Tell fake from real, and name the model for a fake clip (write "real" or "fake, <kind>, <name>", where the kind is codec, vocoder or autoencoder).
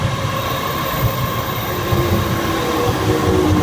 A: real